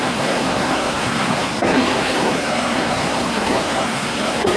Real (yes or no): no